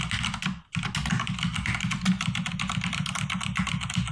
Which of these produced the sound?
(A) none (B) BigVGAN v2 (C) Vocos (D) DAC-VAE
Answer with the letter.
A